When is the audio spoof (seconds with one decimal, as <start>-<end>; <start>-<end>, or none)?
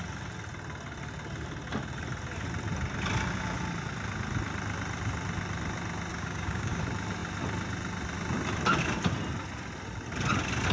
6.1-6.8